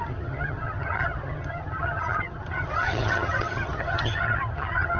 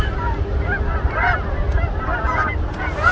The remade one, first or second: first